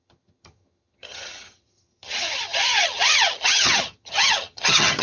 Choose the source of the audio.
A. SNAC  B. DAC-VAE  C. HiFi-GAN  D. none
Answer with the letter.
C